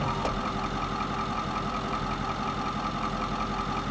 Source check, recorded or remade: recorded